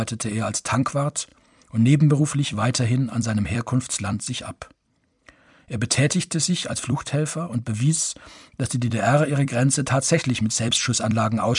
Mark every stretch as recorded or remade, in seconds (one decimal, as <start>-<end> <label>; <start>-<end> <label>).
0.0-1.3 remade; 1.3-2.2 recorded; 2.2-11.6 remade